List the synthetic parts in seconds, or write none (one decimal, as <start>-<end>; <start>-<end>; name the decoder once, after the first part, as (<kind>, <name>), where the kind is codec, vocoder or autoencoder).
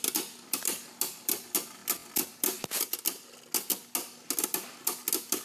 none